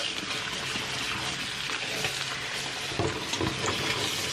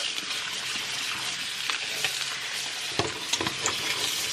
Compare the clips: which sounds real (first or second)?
first